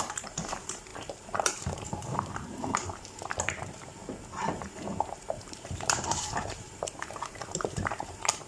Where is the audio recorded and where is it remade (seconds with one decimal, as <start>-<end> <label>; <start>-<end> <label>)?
0.0-4.0 remade; 4.0-4.5 recorded; 4.5-8.5 remade